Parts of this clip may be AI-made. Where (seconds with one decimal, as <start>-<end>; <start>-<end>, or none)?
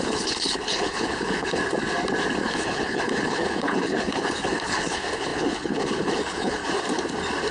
0.0-1.6; 2.4-6.6